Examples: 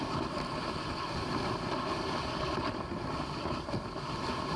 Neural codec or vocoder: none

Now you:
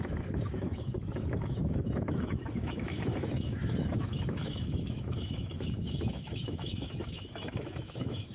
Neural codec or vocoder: autoencoder, DAC-VAE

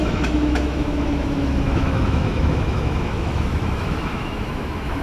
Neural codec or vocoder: autoencoder, DAC-VAE